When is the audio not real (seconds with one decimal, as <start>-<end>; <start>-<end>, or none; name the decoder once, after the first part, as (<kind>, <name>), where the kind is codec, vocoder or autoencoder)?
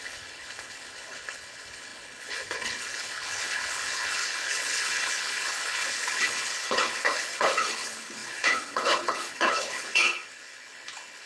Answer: 0.0-11.3 (codec, HILCodec)